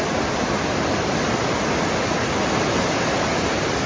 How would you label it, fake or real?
real